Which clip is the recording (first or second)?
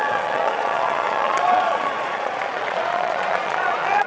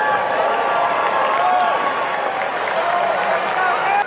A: second